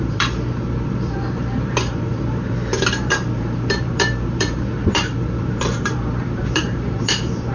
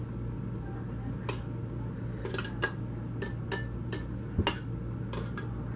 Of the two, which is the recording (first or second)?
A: second